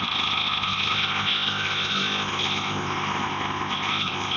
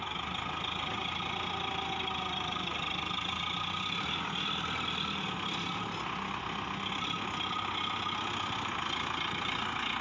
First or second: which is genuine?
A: second